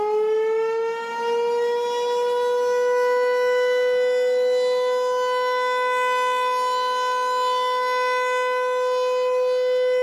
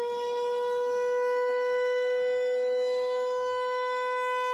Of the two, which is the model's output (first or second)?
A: second